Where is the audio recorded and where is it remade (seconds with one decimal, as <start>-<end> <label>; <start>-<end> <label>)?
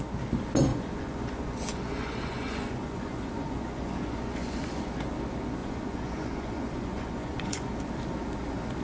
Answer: 0.0-0.7 recorded; 0.7-4.9 remade; 4.9-5.6 recorded; 5.6-7.7 remade; 7.7-8.8 recorded